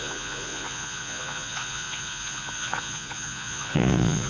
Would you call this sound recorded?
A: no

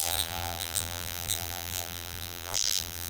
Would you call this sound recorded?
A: no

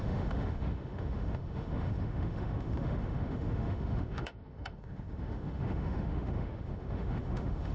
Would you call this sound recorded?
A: no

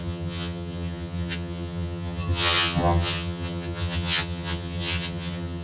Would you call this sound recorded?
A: no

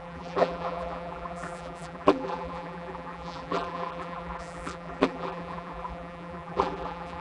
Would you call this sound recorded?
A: no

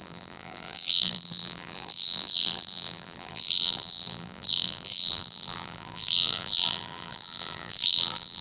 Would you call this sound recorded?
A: no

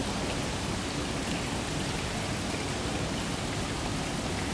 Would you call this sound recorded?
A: yes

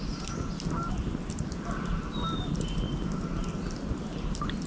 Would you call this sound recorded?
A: yes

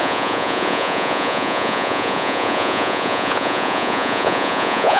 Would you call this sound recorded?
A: no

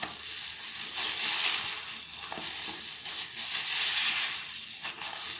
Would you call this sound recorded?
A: yes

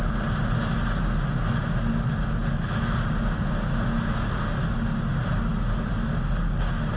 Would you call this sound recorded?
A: yes